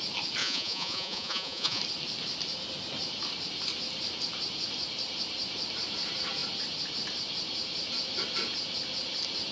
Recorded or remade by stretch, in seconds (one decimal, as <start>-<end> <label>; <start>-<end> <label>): 0.0-0.4 recorded; 0.4-1.8 remade; 1.8-9.5 recorded